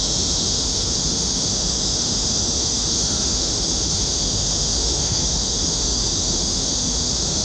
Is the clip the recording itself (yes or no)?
no